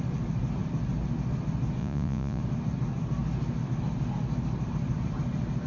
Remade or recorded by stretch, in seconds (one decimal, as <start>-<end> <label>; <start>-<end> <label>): 0.0-1.8 recorded; 1.8-2.4 remade; 2.4-5.7 recorded